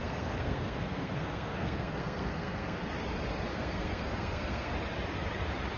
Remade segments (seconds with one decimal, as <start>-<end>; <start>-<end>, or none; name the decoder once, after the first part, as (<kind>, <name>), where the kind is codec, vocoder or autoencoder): 0.0-2.8 (codec, SNAC); 3.5-4.7